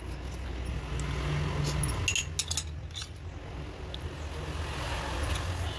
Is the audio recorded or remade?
recorded